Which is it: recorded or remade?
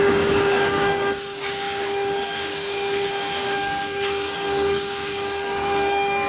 remade